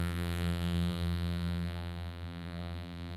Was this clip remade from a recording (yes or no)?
yes